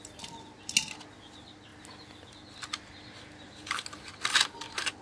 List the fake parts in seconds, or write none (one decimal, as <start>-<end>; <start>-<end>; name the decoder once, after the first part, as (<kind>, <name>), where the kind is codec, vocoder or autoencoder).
none